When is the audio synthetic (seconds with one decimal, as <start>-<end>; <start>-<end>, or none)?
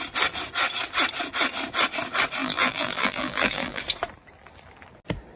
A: 2.4-3.8